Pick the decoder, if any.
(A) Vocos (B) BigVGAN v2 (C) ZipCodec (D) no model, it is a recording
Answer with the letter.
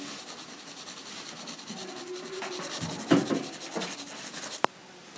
D